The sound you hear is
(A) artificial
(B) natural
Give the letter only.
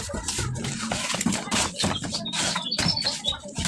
B